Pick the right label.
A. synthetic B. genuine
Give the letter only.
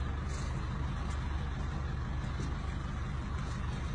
B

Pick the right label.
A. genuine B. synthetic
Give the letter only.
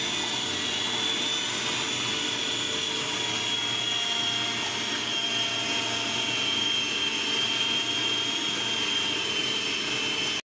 A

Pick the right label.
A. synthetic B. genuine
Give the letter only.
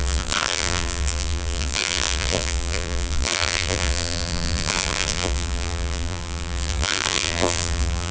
A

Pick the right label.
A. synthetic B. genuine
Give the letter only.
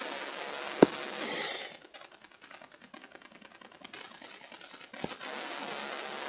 B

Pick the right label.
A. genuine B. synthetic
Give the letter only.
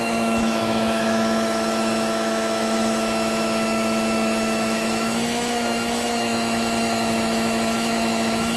B